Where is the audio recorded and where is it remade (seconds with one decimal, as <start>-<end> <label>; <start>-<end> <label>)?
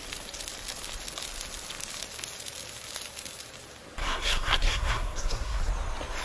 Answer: 0.0-4.0 recorded; 4.0-5.7 remade; 5.7-6.2 recorded